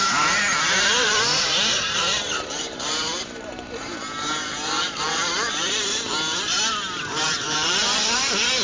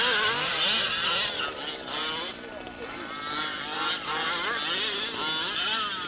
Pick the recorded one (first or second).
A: second